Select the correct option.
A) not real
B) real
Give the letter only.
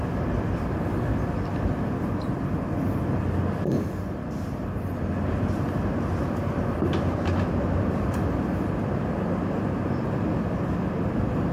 B